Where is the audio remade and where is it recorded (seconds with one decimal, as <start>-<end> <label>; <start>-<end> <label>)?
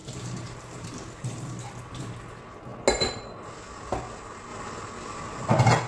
0.0-1.7 remade; 1.7-5.9 recorded